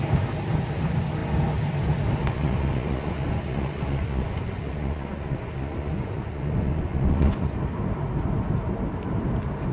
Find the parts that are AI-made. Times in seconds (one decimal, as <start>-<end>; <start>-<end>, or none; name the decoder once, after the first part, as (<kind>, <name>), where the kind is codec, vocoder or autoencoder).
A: 2.2-7.5 (vocoder, Vocos)